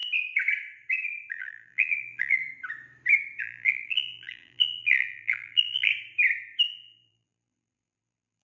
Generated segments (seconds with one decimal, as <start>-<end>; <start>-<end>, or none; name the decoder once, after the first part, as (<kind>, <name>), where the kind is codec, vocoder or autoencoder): 1.3-2.4 (vocoder, BigVGAN v2); 3.4-5.9; 6.7-8.4